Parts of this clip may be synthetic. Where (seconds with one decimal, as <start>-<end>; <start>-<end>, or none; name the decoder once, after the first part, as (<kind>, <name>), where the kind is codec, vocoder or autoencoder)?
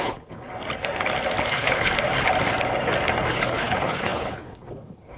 0.0-0.5 (codec, HILCodec); 1.5-1.9; 3.3-5.2